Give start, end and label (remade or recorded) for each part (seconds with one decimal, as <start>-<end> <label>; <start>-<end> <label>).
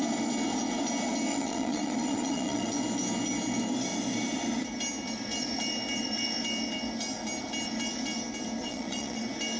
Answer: 0.0-1.3 recorded; 1.3-2.7 remade; 2.7-8.6 recorded; 8.6-9.2 remade; 9.2-9.6 recorded